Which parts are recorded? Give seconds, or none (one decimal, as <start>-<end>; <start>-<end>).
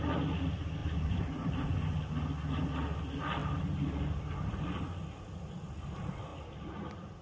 0.0-7.2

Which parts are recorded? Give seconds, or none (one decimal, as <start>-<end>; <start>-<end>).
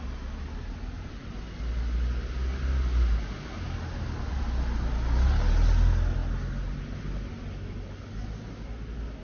0.0-9.2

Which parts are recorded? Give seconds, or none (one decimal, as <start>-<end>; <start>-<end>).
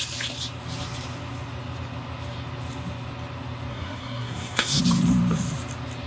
0.0-3.7; 4.8-6.1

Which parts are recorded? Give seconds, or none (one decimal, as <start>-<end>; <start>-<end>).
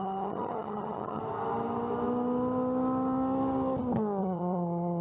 1.2-4.2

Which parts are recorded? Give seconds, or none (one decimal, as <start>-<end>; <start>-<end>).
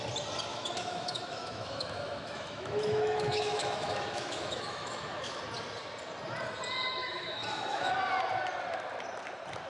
0.0-0.5; 5.4-7.0; 7.9-9.7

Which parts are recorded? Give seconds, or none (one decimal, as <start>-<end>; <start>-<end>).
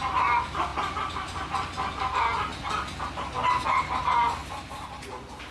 0.0-5.5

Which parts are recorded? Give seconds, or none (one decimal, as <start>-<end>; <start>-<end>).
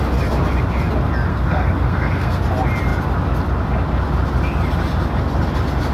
0.0-1.3; 2.4-5.9